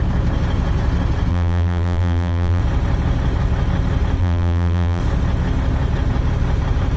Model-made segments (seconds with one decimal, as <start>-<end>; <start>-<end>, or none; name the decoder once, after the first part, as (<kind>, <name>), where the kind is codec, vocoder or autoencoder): 1.3-2.6 (vocoder, BigVGAN v2); 4.2-5.0